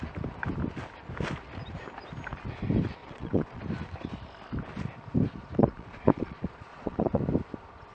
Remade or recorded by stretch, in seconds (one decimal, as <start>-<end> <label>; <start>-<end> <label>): 0.0-3.0 recorded; 3.0-3.6 remade; 3.6-5.6 recorded; 5.6-7.2 remade; 7.2-7.9 recorded